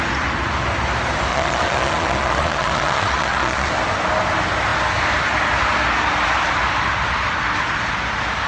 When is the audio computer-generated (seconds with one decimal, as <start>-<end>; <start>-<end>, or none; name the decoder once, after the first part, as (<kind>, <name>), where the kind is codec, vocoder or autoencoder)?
1.3-3.7 (vocoder, Vocos)